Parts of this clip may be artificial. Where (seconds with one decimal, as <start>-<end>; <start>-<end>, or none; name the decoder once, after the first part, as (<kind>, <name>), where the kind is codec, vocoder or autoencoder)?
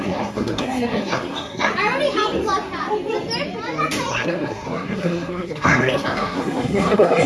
0.0-1.7 (codec, SNAC); 4.1-7.3